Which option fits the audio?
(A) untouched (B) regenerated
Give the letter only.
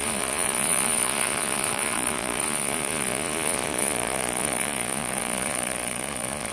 B